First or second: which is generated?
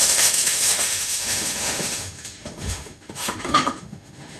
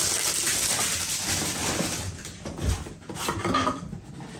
first